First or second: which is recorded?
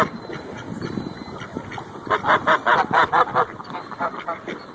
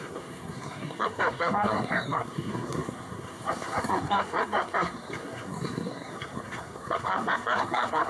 first